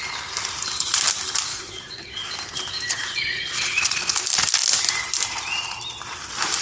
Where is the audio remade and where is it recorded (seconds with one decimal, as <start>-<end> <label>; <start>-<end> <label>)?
0.0-1.5 recorded; 1.5-2.3 remade; 2.3-2.9 recorded; 2.9-4.1 remade; 4.1-6.6 recorded